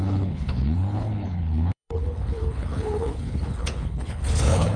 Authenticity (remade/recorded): remade